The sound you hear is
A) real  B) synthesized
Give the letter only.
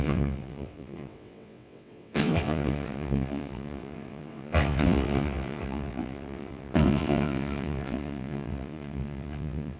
B